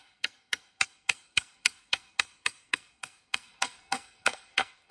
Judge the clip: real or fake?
fake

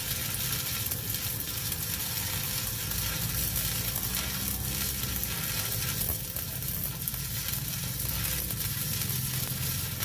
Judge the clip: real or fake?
real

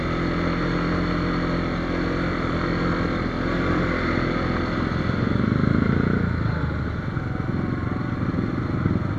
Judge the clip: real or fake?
real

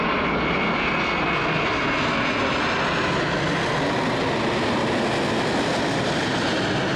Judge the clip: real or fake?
real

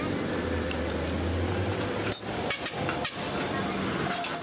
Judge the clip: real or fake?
real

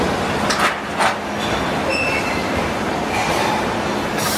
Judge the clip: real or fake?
real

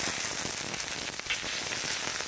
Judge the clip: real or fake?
real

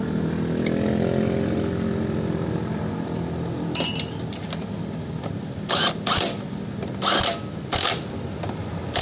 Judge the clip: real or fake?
real